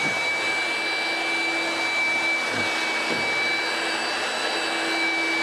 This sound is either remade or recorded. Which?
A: recorded